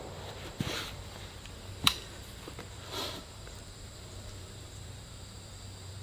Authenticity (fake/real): fake